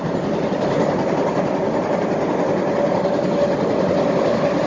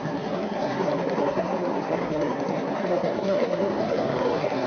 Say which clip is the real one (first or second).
first